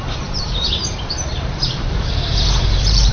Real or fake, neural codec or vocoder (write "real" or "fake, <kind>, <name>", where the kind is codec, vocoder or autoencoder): fake, vocoder, BigVGAN v2